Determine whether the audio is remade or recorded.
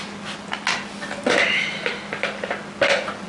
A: recorded